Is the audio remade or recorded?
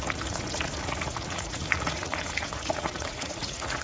remade